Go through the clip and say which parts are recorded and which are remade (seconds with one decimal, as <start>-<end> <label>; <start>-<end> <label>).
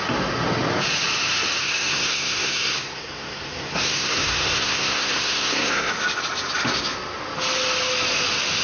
0.0-1.6 recorded; 1.6-5.9 remade; 5.9-8.6 recorded